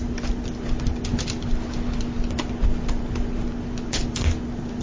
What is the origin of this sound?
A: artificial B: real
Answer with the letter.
B